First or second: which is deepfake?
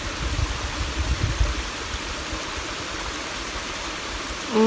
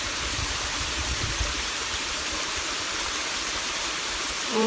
second